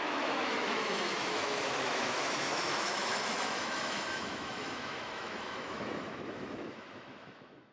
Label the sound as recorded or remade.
remade